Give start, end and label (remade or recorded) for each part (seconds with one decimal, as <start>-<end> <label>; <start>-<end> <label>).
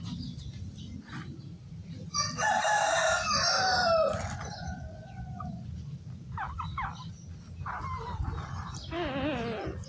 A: 0.0-4.4 recorded; 4.4-5.9 remade; 5.9-9.9 recorded